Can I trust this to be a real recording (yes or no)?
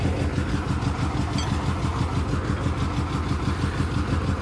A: yes